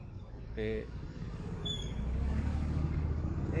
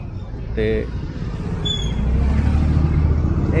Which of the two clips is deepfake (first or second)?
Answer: first